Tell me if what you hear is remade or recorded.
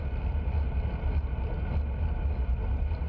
recorded